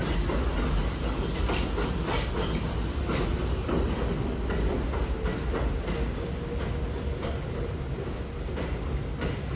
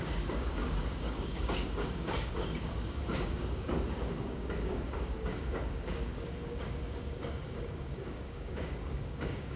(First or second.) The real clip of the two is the first